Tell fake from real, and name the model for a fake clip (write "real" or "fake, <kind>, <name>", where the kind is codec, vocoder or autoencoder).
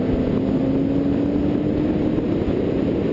real